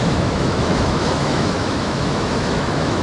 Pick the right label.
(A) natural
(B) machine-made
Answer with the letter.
B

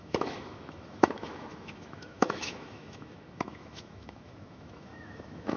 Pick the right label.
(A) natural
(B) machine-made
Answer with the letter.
B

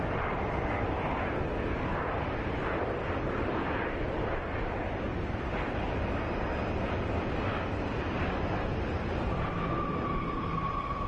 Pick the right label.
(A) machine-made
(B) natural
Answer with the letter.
B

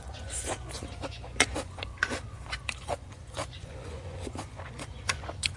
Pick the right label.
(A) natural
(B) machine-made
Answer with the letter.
B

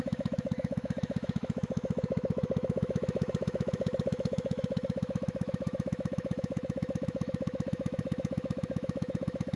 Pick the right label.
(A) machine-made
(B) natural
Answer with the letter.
A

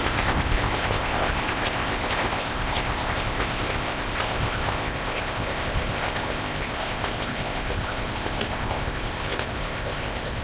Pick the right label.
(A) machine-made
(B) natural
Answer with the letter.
A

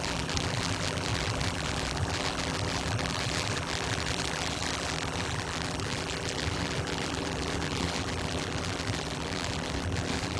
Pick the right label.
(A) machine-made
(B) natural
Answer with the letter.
A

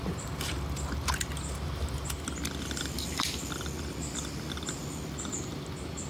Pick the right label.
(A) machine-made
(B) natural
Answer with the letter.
B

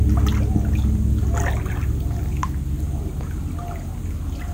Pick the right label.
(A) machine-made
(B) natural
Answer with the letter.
B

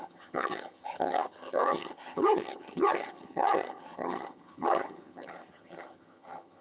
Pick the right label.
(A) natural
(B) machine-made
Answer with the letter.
B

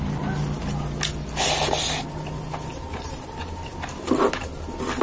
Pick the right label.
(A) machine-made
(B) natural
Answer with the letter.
B